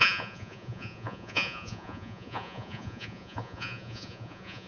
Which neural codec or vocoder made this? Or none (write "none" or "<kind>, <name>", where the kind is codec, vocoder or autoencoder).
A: vocoder, Vocos